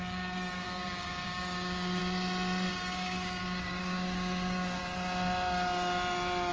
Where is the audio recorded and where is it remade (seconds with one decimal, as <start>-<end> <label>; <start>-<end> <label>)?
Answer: 0.0-2.0 remade; 2.0-2.7 recorded; 2.7-4.8 remade; 4.8-6.5 recorded